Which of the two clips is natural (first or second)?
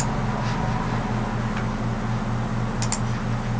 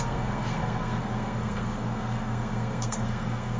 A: first